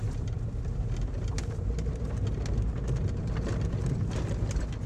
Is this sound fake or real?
real